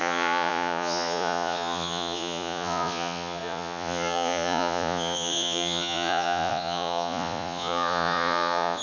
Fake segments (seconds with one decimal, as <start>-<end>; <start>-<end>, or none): 0.0-8.8